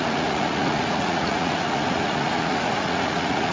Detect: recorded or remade remade